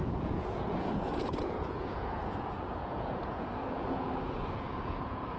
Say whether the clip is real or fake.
fake